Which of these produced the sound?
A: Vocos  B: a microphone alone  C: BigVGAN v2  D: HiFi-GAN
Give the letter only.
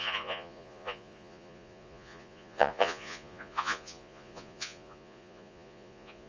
A